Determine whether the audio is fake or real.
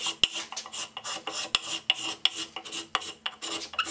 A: real